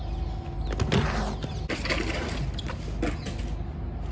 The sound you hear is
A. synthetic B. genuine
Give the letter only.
B